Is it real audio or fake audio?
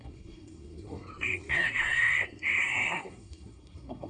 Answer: fake